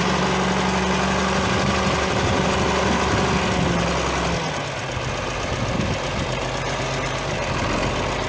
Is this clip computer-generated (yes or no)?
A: no